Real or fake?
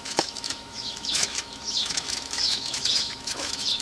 fake